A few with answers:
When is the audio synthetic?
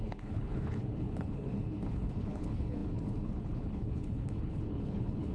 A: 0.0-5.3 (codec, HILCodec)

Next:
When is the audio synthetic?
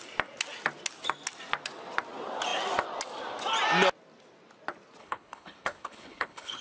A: 5.0-6.6 (codec, HILCodec)